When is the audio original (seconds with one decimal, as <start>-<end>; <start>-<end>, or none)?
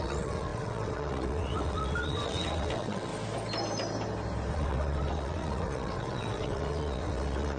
3.1-4.5